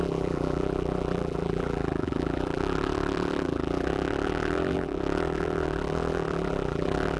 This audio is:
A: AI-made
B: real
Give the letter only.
A